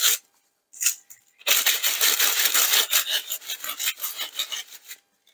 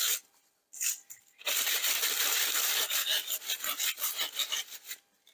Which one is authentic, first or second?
first